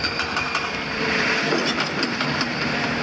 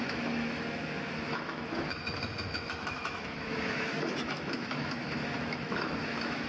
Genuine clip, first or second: first